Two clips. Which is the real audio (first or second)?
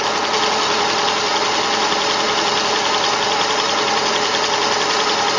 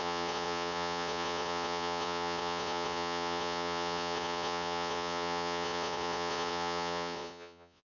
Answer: first